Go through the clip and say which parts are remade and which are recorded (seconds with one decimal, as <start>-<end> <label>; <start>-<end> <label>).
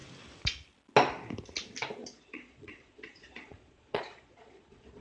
0.0-2.0 recorded; 2.0-5.0 remade